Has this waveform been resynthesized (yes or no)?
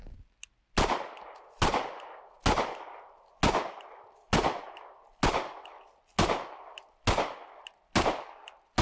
no